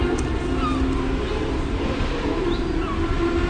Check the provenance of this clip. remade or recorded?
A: recorded